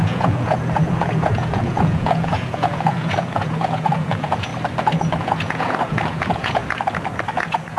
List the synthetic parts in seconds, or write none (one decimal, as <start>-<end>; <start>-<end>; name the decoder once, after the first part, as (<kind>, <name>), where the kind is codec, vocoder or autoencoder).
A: 0.0-4.5 (vocoder, Vocos); 5.2-6.6; 7.3-7.8